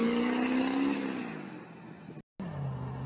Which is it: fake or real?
real